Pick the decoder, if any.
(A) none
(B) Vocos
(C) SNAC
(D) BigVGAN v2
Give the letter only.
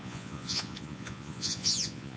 B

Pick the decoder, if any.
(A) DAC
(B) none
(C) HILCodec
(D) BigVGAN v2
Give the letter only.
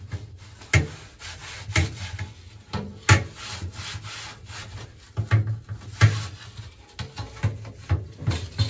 B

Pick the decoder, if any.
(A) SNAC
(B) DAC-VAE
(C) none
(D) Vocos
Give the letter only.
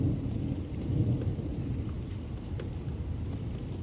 C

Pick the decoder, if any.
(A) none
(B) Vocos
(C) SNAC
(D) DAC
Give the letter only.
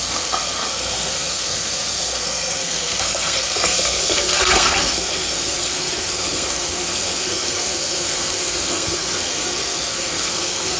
C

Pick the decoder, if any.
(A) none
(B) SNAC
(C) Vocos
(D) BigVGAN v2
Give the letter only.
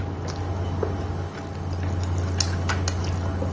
A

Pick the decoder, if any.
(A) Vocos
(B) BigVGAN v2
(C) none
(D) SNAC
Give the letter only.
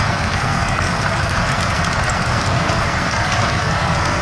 D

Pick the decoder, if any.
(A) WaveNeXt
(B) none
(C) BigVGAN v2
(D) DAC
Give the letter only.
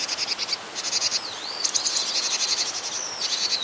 B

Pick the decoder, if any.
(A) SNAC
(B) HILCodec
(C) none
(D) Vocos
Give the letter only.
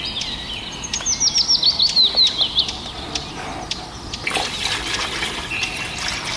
C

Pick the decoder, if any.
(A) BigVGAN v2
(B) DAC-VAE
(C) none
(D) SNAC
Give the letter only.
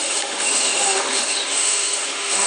B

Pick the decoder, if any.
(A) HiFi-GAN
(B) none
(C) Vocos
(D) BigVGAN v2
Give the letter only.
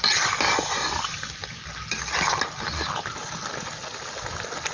B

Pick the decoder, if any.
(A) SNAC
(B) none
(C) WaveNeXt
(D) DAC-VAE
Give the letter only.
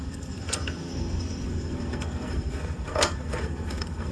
A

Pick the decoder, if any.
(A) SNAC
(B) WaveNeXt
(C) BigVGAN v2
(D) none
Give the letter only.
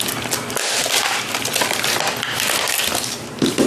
D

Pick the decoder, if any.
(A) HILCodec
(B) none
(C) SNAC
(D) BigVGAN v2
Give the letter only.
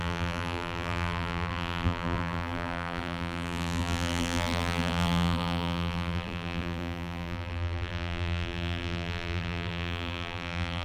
D